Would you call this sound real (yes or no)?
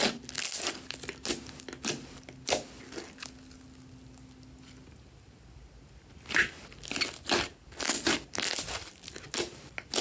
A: yes